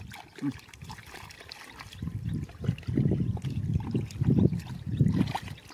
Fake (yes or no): no